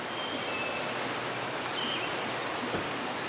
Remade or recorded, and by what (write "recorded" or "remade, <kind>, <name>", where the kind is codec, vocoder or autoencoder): recorded